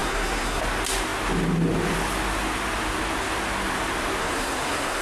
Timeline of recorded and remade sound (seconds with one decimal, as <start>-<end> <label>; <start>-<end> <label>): 0.0-0.6 remade; 0.6-4.2 recorded; 4.2-5.0 remade